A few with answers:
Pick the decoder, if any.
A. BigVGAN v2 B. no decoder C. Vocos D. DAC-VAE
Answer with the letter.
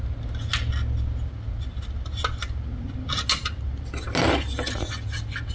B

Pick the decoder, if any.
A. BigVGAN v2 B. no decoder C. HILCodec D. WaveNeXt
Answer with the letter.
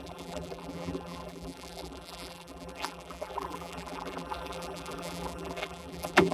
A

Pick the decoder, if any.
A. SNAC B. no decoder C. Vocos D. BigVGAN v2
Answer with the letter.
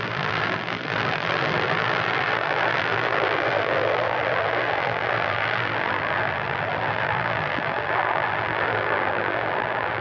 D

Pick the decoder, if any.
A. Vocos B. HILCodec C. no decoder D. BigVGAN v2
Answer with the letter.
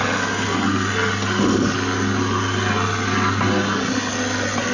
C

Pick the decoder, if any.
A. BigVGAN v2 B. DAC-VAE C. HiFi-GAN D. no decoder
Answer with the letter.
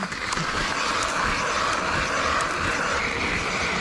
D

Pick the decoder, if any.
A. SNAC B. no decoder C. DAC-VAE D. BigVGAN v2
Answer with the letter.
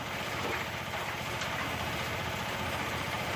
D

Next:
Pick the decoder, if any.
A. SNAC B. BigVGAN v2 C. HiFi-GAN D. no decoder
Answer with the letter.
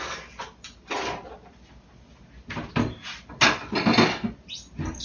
D